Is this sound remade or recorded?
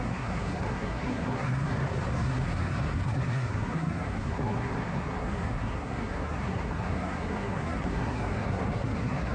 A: remade